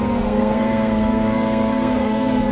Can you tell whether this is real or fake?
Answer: fake